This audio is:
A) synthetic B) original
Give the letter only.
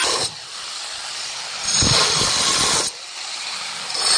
B